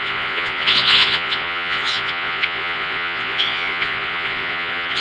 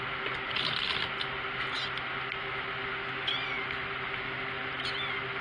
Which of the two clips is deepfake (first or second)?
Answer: first